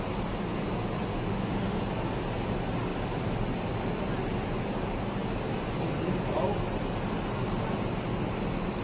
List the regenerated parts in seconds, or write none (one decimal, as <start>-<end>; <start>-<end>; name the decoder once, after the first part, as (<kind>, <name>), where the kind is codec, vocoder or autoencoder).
1.1-1.8 (autoencoder, DAC-VAE)